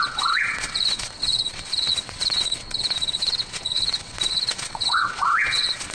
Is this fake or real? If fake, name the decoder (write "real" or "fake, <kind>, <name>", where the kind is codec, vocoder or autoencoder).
fake, vocoder, WaveNeXt